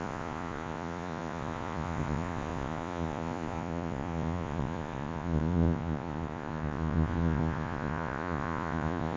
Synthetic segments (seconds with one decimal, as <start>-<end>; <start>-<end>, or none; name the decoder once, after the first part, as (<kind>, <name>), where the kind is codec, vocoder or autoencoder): 0.0-9.2 (vocoder, Vocos)